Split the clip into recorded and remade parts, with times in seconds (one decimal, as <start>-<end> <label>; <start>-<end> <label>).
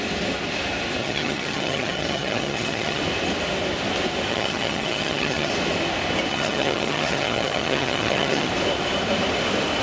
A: 0.0-1.0 recorded; 1.0-3.0 remade; 3.0-4.3 recorded; 4.3-5.5 remade; 5.5-6.3 recorded; 6.3-8.5 remade; 8.5-9.8 recorded